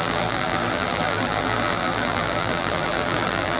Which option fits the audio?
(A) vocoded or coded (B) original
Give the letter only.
A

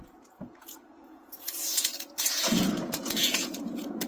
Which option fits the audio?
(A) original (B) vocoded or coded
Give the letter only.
B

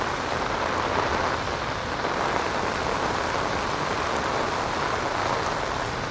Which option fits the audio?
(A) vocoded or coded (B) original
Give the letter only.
B